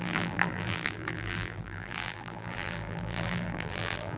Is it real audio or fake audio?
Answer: fake